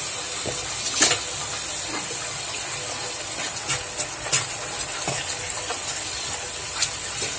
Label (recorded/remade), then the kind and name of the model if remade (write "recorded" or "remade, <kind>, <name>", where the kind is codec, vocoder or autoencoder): recorded